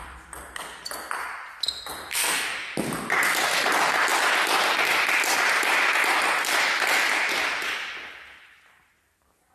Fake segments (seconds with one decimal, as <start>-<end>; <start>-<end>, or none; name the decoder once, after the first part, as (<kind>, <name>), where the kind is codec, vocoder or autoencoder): 2.1-2.7 (codec, SNAC)